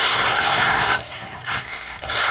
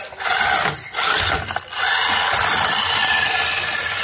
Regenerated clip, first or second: first